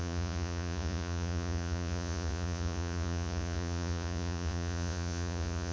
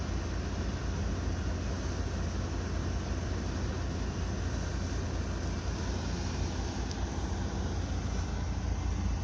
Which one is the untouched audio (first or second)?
second